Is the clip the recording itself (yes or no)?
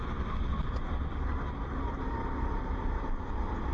yes